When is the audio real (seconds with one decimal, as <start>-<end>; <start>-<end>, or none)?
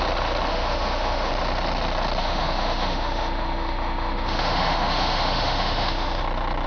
0.0-0.5; 1.3-2.2; 6.2-6.7